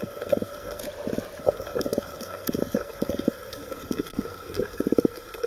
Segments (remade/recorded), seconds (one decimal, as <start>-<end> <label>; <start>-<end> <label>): 0.0-0.8 remade; 0.8-1.4 recorded; 1.4-5.5 remade